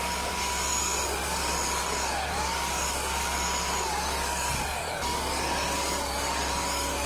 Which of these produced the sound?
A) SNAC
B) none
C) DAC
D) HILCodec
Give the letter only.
C